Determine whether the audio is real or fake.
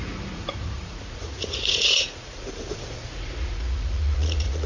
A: fake